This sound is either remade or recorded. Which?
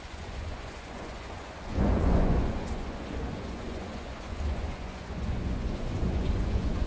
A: remade